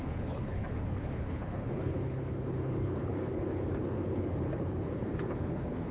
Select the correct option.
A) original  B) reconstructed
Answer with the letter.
B